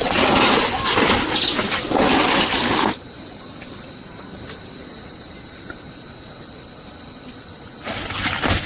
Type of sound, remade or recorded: recorded